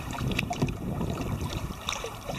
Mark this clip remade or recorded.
remade